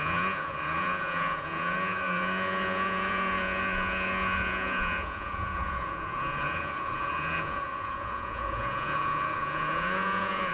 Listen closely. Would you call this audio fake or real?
fake